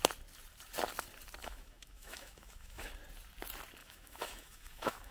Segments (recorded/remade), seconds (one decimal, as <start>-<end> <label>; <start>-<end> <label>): 0.0-1.4 recorded; 1.4-2.9 remade; 2.9-3.8 recorded; 3.8-5.1 remade